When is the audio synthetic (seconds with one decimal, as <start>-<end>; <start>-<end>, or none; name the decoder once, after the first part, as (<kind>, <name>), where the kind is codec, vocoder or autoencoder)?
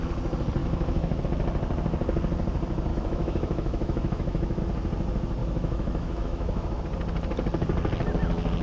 0.6-1.2 (autoencoder, DAC-VAE); 2.9-4.6; 5.4-6.8